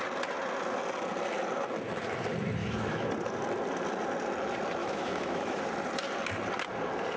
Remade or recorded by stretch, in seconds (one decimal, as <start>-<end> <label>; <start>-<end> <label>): 0.0-2.6 recorded; 2.6-3.1 remade; 3.1-4.8 recorded; 4.8-5.6 remade; 5.6-7.2 recorded